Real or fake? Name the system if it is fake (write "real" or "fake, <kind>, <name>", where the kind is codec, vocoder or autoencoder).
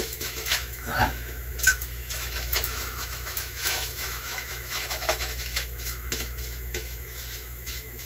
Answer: fake, autoencoder, DAC-VAE